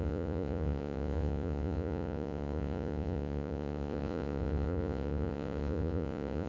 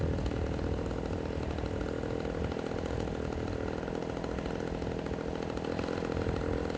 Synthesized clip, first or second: first